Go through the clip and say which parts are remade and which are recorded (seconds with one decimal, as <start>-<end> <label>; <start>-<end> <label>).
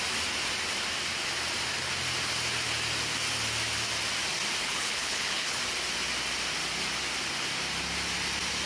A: 0.0-4.6 recorded; 4.6-5.6 remade; 5.6-8.7 recorded